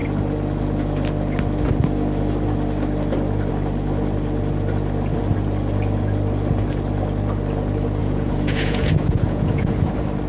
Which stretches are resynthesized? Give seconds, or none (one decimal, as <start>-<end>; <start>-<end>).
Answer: 8.0-9.9